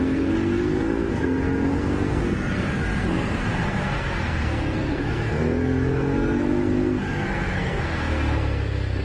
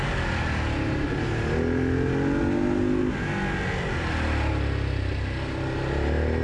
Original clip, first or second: second